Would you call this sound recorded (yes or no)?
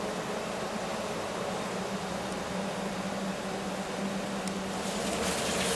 yes